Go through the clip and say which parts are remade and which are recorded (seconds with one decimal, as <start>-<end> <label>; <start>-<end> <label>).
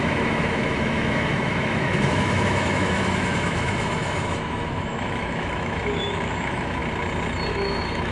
0.0-6.8 remade; 6.8-7.5 recorded; 7.5-8.1 remade